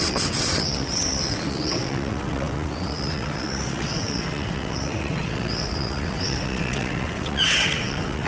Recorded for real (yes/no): no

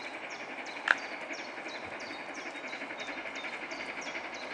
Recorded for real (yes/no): yes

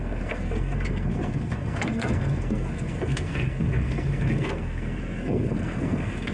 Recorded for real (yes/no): no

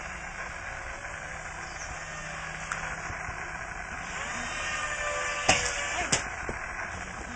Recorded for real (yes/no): yes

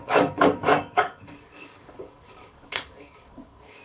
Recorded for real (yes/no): no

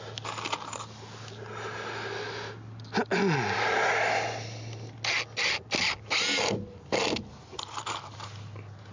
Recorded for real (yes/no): yes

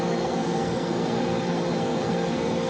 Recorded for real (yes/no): no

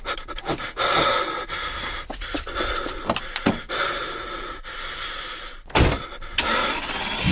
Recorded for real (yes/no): yes